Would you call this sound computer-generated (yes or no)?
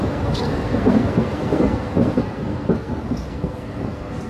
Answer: yes